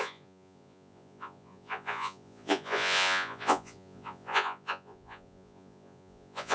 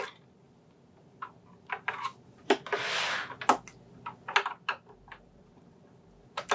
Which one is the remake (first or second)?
first